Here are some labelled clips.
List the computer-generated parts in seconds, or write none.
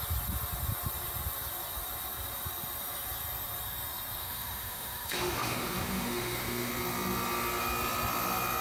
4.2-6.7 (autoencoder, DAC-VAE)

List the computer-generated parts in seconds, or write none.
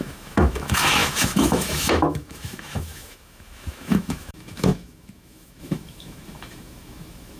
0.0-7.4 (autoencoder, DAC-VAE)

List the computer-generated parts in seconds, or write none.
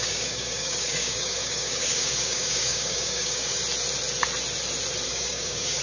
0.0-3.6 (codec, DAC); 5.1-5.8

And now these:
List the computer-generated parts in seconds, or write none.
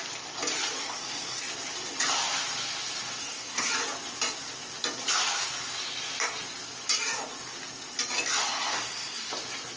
0.8-1.4 (codec, SNAC); 3.2-3.7; 8.5-9.3